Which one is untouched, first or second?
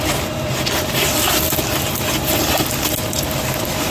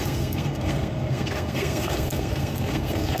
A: first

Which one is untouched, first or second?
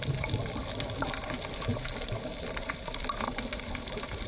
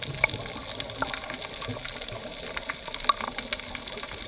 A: second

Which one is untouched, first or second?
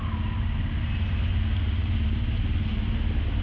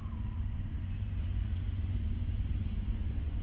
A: first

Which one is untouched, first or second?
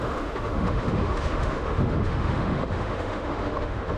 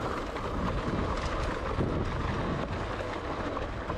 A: second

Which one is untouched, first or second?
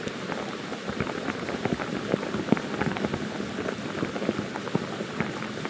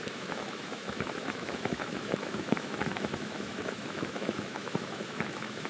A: first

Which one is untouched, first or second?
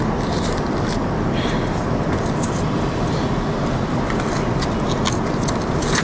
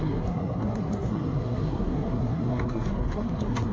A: first